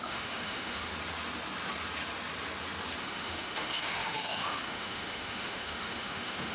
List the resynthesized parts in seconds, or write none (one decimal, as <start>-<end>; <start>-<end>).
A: 0.0-0.9; 3.0-6.5